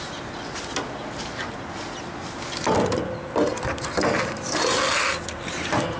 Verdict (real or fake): real